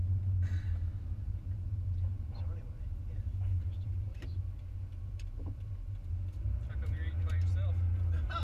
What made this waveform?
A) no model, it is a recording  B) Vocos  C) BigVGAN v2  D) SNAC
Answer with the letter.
C